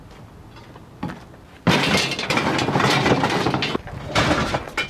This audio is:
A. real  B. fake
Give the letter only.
A